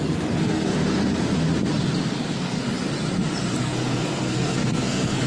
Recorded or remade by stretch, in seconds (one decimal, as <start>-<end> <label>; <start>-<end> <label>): 0.0-0.7 remade; 0.7-2.1 recorded; 2.1-2.6 remade; 2.6-3.6 recorded; 3.6-5.3 remade